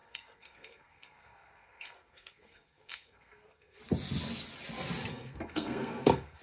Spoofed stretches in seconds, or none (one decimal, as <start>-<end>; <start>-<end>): 0.0-3.8; 5.1-6.4